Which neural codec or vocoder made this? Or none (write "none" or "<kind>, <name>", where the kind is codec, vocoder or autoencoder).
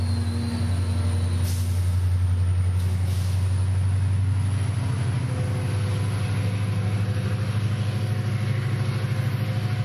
none